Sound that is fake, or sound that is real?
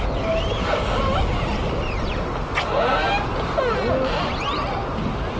real